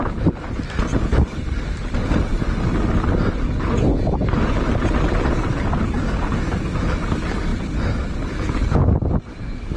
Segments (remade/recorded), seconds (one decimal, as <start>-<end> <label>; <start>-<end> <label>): 0.0-9.8 recorded

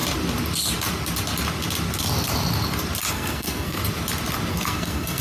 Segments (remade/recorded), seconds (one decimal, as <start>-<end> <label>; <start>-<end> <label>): 0.0-3.1 recorded; 3.1-3.8 remade; 3.8-4.5 recorded; 4.5-5.2 remade